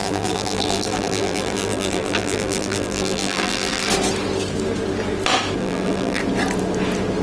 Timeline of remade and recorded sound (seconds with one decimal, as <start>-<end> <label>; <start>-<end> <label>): 0.0-3.9 remade; 3.9-5.6 recorded; 5.6-6.2 remade; 6.2-7.2 recorded